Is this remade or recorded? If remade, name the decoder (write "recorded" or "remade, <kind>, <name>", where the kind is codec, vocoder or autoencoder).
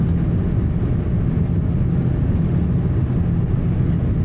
recorded